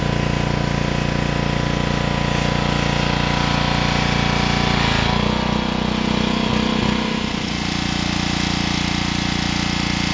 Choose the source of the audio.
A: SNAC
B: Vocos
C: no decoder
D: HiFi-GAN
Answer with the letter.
C